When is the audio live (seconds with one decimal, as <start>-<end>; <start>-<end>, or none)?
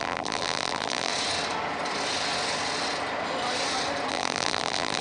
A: 1.1-4.1